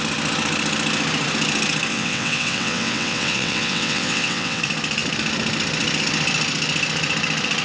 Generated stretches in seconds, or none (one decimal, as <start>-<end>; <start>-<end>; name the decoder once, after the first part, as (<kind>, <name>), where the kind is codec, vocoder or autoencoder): 1.9-4.6 (vocoder, WaveNeXt)